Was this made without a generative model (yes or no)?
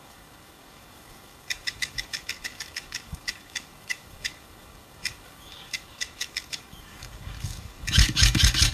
no